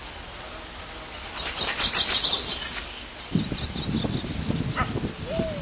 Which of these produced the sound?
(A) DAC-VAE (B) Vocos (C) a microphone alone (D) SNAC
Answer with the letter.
C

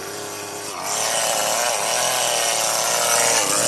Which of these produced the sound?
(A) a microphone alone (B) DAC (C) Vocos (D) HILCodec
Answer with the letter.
A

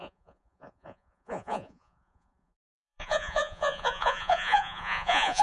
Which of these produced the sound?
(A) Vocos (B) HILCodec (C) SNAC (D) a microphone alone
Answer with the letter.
A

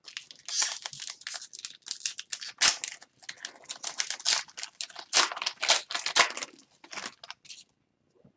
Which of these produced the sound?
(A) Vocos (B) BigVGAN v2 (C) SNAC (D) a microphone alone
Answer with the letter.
D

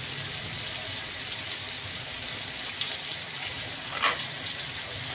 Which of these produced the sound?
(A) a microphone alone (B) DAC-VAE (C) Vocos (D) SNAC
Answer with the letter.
A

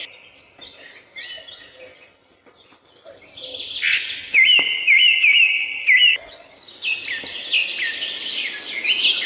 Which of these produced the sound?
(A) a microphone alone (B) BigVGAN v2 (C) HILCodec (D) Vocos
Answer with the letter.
A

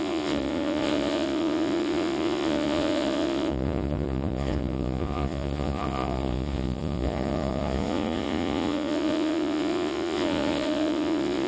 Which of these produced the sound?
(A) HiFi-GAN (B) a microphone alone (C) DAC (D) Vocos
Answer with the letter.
D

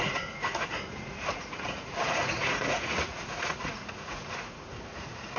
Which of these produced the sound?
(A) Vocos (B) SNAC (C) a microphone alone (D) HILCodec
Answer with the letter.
A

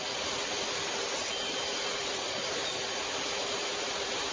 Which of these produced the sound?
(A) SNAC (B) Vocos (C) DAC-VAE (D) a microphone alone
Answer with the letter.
D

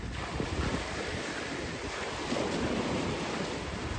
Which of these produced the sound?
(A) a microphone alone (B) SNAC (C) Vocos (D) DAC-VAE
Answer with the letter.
A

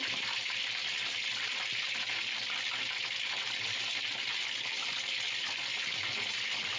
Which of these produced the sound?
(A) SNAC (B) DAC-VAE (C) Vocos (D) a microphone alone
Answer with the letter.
D